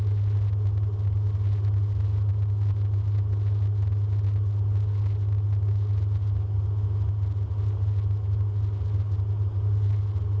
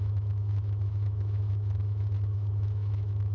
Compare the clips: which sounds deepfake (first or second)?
second